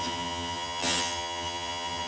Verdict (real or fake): fake